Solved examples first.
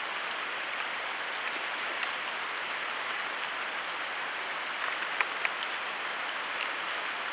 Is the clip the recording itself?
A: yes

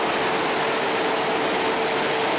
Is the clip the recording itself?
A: yes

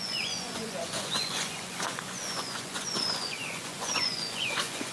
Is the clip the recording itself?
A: no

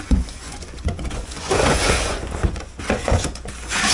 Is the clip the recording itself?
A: no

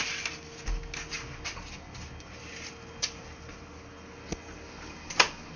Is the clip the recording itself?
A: yes